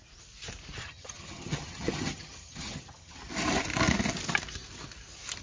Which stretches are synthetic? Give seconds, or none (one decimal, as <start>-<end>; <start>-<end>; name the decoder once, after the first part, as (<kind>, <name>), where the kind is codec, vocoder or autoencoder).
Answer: 0.8-3.2 (vocoder, HiFi-GAN)